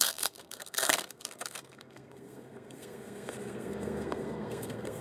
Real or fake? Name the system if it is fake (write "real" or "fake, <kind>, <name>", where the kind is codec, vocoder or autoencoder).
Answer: fake, codec, SNAC